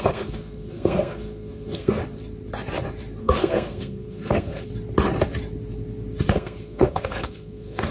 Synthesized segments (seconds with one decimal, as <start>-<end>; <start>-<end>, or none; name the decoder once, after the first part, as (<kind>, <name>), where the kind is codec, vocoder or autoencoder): 0.0-2.0 (codec, SNAC); 3.2-4.7; 6.3-7.9